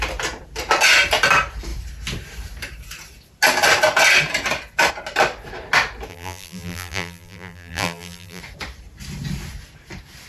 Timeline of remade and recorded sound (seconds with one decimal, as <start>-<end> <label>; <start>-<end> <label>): 0.0-6.1 recorded; 6.1-8.4 remade; 8.4-10.3 recorded